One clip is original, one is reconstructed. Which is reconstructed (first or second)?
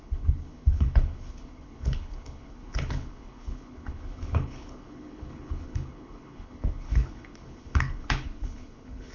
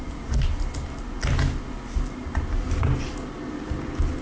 first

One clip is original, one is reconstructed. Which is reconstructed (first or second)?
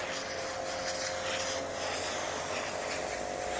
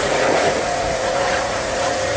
second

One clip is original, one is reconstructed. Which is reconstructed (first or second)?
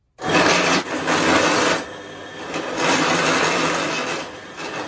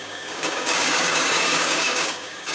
second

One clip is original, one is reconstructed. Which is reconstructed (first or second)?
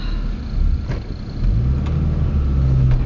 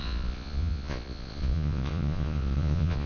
second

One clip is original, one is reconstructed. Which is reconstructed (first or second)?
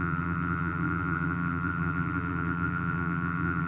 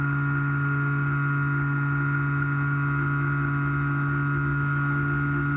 first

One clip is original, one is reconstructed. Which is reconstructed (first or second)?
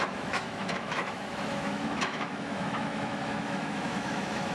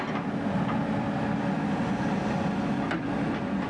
first